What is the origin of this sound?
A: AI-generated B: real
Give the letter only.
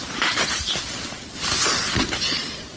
B